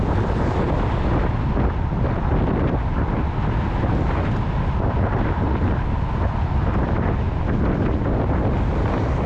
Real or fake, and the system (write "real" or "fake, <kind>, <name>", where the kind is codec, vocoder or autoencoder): real